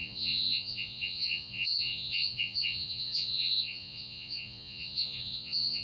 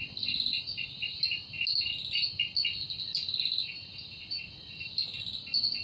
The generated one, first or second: first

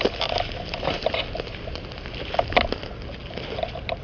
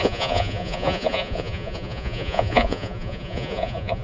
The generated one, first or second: second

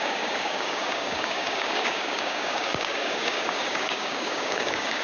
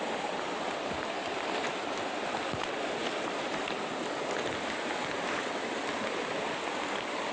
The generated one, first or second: first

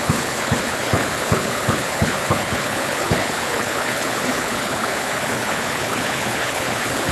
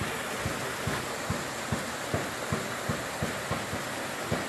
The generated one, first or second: first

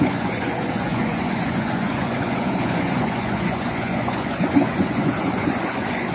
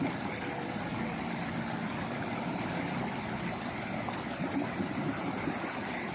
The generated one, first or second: first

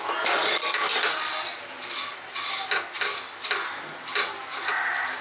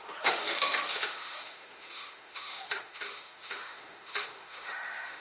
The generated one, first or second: second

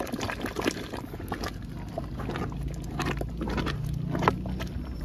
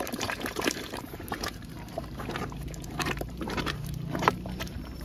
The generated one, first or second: second